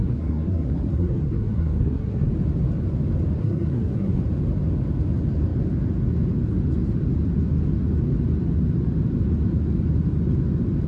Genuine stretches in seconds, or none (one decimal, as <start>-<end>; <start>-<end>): 2.3-3.4; 4.2-10.9

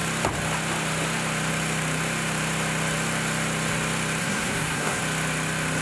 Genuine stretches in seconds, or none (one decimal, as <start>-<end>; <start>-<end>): 0.0-4.2; 5.0-5.8

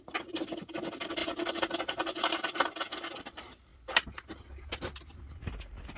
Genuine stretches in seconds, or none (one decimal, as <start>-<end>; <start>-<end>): 0.0-6.0

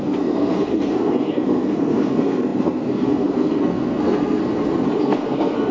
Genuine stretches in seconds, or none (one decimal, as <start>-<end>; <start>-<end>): 4.4-5.0

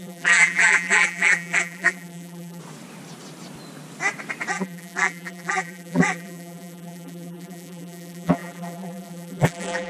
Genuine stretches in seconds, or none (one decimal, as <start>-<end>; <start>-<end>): 2.6-4.5

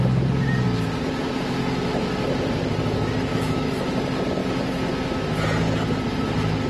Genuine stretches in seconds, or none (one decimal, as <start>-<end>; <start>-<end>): 0.0-3.3; 4.0-6.7

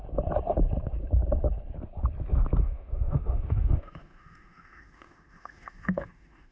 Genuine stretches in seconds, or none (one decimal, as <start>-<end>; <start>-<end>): 0.0-2.6